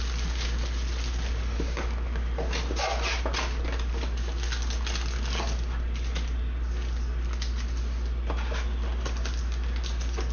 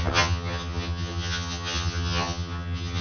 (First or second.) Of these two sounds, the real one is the first